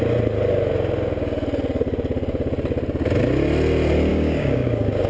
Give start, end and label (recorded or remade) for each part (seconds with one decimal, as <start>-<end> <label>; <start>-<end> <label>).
0.0-4.1 recorded; 4.1-5.1 remade